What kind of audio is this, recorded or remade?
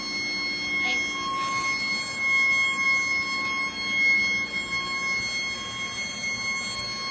recorded